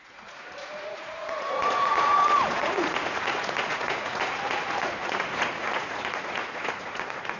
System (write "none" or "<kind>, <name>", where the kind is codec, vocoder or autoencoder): vocoder, Vocos